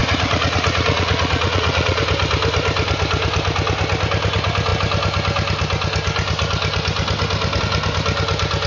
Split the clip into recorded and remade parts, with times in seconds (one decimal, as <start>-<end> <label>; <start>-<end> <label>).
0.0-2.0 remade; 2.0-8.7 recorded

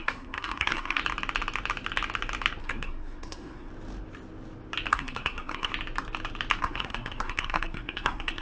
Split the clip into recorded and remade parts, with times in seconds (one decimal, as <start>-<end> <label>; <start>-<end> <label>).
0.0-1.0 remade; 1.0-2.6 recorded; 2.6-3.7 remade; 3.7-4.9 recorded; 4.9-5.7 remade; 5.7-6.6 recorded; 6.6-8.4 remade

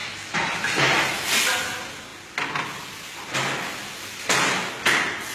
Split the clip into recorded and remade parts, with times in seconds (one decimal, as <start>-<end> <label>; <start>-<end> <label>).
0.0-5.3 recorded

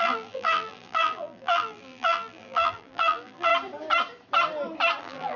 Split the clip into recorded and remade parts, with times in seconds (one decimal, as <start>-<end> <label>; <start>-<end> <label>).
0.0-3.5 remade; 3.5-5.0 recorded; 5.0-5.4 remade

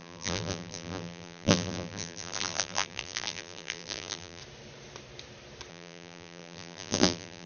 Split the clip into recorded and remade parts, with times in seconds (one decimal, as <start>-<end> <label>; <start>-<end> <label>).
0.0-4.4 remade; 4.4-5.7 recorded; 5.7-7.5 remade

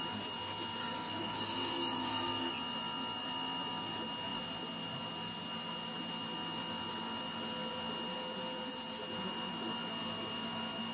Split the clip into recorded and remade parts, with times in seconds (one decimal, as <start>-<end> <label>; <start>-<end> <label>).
0.0-0.8 recorded; 0.8-2.5 remade; 2.5-10.9 recorded

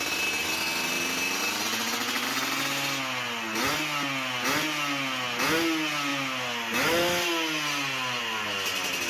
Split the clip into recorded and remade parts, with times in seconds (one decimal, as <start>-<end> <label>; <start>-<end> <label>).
0.0-9.1 recorded

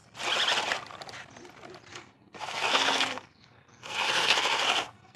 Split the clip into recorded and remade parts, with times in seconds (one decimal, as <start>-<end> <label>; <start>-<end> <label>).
0.0-1.9 recorded; 1.9-5.2 remade